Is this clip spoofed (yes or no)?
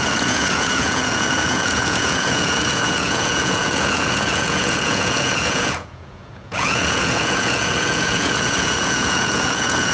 yes